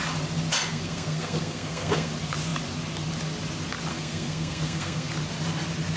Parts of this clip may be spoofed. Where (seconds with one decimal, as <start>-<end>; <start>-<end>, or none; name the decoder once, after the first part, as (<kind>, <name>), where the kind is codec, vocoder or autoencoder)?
0.7-2.1 (codec, SNAC); 3.9-5.1